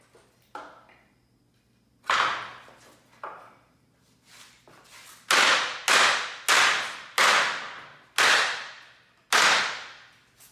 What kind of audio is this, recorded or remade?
recorded